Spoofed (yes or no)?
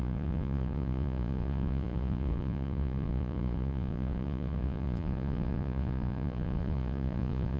yes